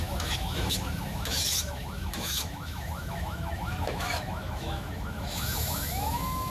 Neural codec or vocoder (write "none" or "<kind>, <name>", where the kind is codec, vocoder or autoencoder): autoencoder, DAC-VAE